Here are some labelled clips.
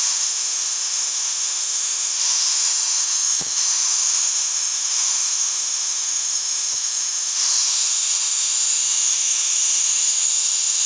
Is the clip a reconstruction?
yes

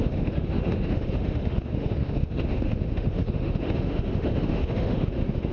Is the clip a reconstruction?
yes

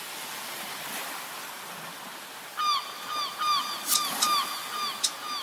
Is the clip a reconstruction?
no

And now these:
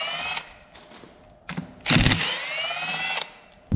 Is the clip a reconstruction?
no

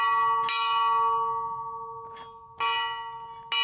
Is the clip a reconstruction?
no